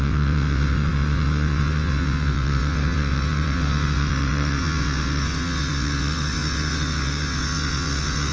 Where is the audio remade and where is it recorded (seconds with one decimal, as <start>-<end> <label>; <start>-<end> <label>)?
0.0-8.3 remade